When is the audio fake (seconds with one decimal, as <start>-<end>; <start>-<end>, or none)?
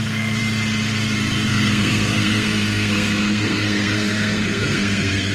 0.0-0.4; 1.5-5.3